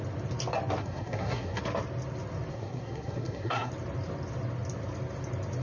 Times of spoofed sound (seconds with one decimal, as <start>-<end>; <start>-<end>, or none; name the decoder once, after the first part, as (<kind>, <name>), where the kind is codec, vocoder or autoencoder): 0.8-1.6 (codec, SNAC); 2.5-3.7